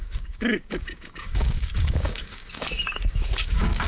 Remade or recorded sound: remade